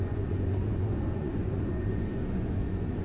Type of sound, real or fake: fake